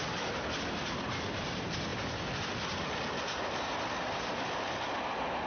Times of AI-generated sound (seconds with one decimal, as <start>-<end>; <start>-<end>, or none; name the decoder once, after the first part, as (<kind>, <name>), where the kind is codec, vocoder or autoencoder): none